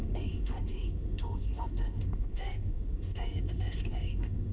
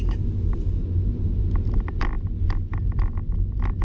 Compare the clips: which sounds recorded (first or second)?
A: second